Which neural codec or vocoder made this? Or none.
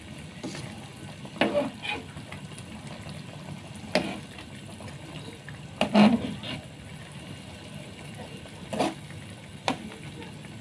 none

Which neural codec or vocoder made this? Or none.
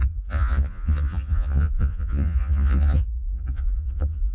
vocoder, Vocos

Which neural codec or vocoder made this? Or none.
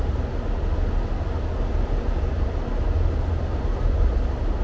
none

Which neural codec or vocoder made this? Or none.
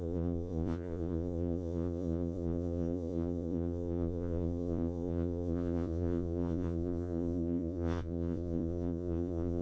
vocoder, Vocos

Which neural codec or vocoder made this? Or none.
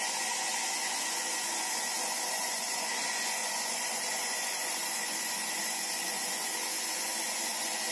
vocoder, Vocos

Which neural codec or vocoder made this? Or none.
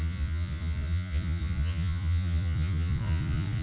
vocoder, Vocos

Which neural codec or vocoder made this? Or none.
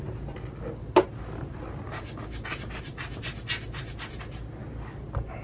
none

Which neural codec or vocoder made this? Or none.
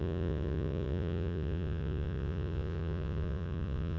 vocoder, Vocos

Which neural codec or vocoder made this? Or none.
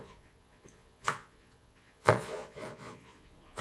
vocoder, Vocos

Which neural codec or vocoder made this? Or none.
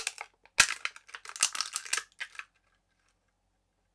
none